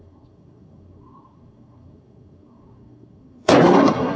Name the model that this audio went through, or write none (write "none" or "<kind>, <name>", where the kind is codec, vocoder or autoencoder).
codec, SNAC